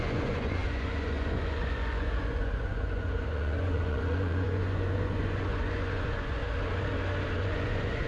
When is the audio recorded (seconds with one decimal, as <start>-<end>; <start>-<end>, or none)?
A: 6.4-7.4